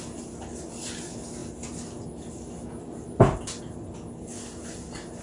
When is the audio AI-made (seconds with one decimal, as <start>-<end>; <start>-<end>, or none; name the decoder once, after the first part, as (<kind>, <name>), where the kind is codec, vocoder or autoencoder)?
none